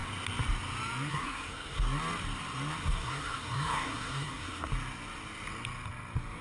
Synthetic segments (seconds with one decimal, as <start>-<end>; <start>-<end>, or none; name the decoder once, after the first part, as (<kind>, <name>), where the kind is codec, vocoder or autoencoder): 1.1-1.8 (codec, SNAC); 2.8-4.7